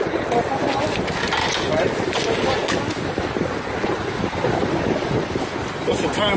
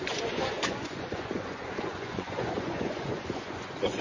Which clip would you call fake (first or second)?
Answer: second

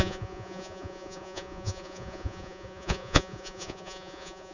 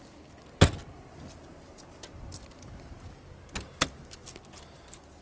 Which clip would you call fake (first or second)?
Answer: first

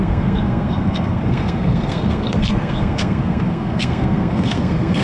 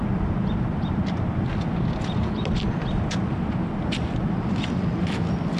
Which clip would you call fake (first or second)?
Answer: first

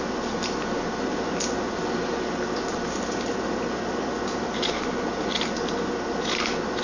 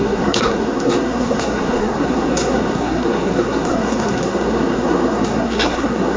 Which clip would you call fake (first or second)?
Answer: second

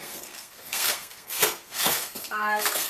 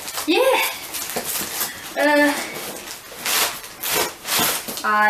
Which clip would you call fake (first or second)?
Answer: first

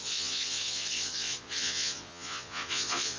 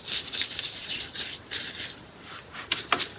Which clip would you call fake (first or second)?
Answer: first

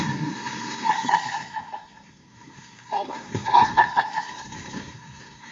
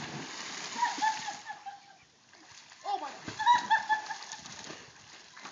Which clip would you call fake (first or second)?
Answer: first